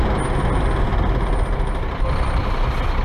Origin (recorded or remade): recorded